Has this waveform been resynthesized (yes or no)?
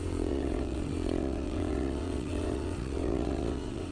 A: yes